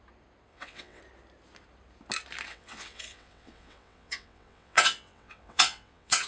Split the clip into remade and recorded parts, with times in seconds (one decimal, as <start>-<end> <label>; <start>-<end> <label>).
0.0-0.5 recorded; 0.5-1.0 remade; 1.0-2.5 recorded; 2.5-6.3 remade